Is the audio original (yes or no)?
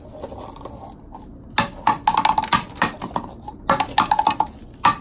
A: yes